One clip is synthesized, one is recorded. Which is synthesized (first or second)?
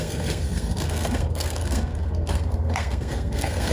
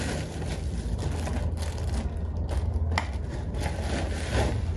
first